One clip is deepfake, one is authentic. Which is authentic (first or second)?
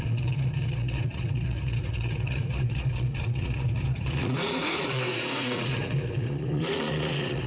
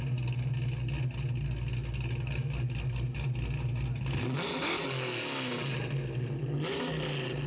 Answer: second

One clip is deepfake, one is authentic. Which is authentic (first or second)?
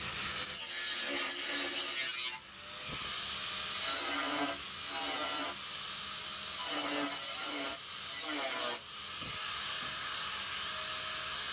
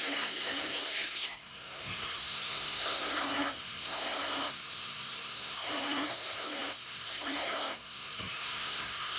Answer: first